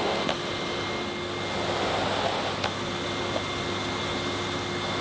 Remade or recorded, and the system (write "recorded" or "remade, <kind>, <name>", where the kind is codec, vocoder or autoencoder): recorded